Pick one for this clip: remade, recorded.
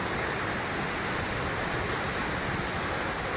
recorded